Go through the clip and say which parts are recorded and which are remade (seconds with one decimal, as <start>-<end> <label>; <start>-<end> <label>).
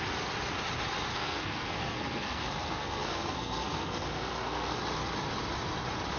0.0-1.1 recorded; 1.1-4.8 remade; 4.8-6.2 recorded